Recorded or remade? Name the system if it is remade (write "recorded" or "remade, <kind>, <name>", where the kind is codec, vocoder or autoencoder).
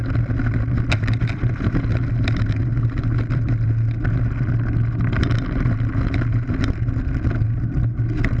recorded